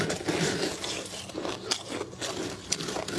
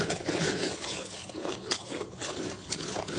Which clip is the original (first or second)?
first